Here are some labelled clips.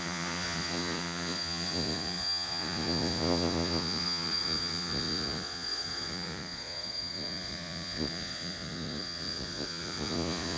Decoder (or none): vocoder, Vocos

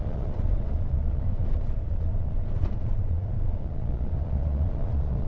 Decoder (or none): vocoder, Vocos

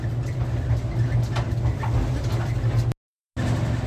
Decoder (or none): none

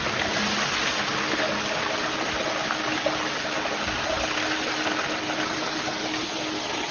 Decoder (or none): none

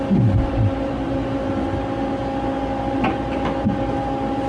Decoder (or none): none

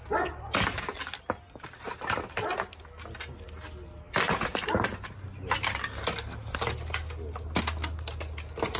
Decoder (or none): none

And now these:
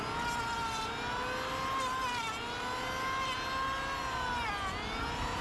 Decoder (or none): none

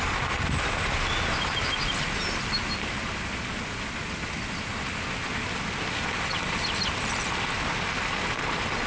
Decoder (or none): none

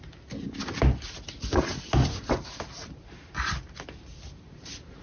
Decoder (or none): none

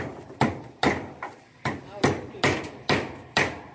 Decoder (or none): none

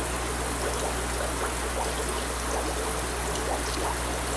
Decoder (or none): none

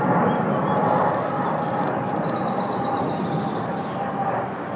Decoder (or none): none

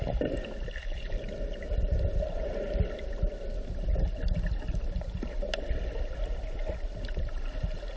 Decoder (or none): none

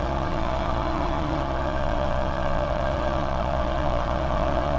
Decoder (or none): vocoder, Vocos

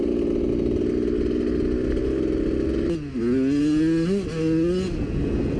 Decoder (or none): none